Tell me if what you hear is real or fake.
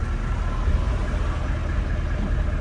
real